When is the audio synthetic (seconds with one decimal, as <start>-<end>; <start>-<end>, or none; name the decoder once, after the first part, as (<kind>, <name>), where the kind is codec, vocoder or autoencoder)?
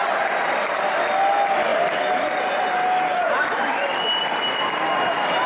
none